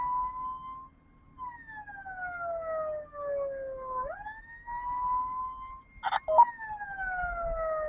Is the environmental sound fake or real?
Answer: real